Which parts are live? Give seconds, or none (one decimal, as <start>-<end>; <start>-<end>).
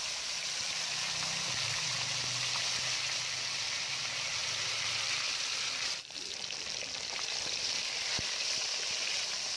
0.0-4.4; 8.6-9.6